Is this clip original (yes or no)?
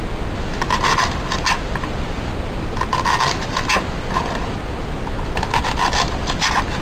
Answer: yes